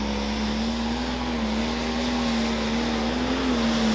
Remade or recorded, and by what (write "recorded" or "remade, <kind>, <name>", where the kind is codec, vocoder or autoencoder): recorded